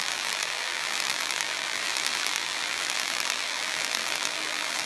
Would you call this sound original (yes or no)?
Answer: no